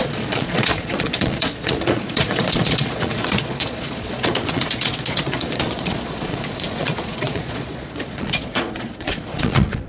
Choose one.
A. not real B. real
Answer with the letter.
A